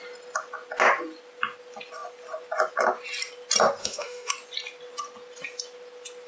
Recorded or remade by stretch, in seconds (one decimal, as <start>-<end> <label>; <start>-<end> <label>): 0.0-3.8 recorded; 3.8-4.3 remade; 4.3-6.3 recorded